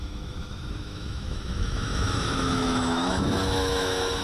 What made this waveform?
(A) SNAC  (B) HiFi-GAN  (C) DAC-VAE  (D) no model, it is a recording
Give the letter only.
C